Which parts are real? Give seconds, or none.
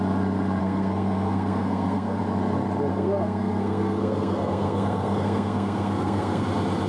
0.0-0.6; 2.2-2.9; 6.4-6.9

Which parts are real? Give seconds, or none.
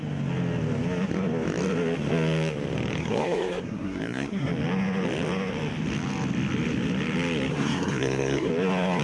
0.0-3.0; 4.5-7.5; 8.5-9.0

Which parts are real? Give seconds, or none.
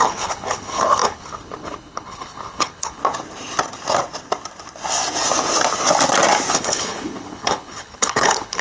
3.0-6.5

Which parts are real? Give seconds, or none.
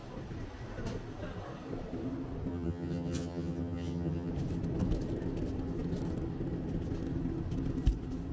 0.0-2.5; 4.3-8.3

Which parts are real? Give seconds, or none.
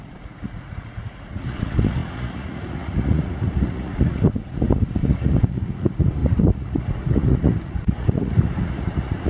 none